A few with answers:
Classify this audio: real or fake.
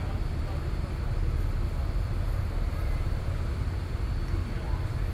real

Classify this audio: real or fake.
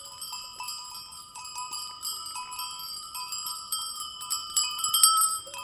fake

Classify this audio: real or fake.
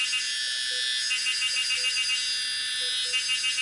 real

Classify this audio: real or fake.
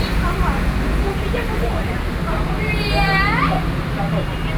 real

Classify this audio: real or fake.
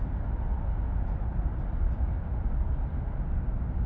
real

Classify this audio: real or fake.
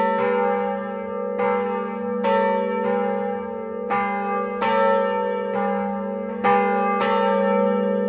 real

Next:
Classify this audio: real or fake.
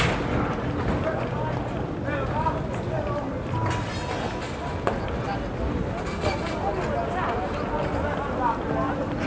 real